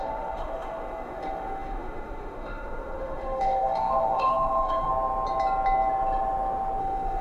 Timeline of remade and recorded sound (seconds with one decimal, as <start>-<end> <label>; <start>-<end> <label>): 0.0-4.9 remade; 4.9-6.8 recorded; 6.8-7.2 remade